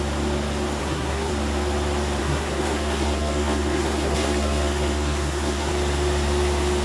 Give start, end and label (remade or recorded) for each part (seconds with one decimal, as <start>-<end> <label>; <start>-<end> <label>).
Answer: 0.0-0.8 recorded; 0.8-1.3 remade; 1.3-2.2 recorded; 2.2-5.7 remade; 5.7-6.8 recorded